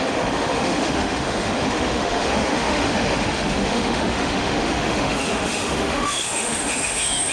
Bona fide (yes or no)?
no